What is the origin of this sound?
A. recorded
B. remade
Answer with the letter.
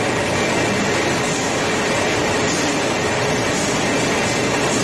A